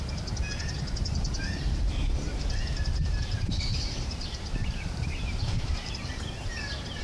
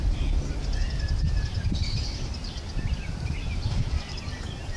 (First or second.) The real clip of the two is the second